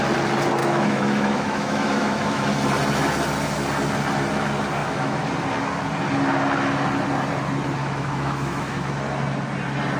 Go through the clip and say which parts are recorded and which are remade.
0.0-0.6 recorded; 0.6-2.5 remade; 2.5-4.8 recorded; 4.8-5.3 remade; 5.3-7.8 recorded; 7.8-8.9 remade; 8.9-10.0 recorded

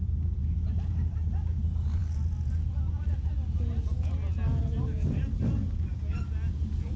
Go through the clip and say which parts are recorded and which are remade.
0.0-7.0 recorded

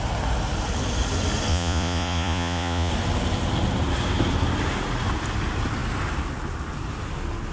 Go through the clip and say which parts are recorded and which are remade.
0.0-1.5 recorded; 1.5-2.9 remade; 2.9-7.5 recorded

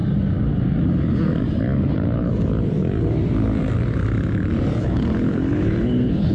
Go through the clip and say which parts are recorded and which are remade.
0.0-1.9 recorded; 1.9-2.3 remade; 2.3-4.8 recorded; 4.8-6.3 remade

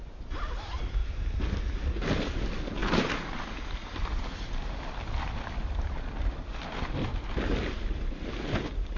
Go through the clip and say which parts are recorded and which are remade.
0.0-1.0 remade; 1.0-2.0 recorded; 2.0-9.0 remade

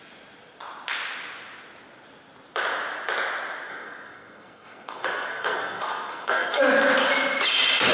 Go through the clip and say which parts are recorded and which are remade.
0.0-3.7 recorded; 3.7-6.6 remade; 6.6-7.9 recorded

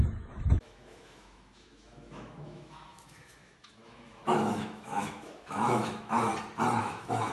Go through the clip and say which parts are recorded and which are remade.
0.0-6.3 remade; 6.3-6.8 recorded; 6.8-7.3 remade